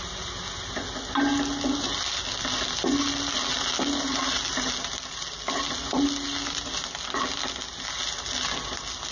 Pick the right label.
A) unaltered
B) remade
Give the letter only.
A